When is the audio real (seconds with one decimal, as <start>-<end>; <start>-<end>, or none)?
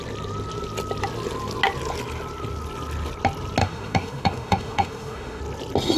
0.0-3.6; 5.4-6.0